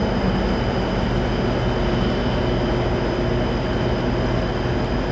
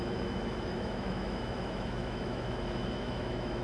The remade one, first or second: second